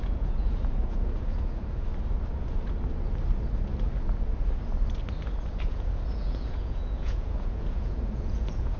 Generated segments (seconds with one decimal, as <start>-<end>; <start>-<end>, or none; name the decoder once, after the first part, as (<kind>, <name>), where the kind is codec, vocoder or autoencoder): 0.0-1.9 (vocoder, Vocos); 5.6-8.8